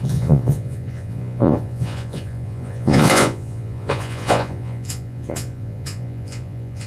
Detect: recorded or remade remade